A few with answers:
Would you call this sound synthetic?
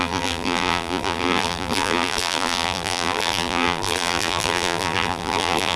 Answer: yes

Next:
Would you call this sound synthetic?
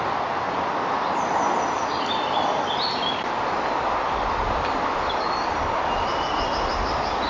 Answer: no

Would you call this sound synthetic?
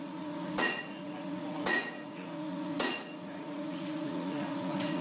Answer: yes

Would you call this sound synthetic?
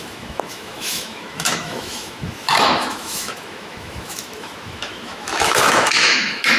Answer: yes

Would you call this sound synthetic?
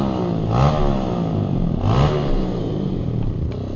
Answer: no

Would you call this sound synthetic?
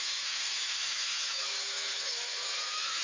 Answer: yes